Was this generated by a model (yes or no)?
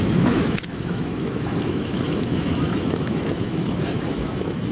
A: yes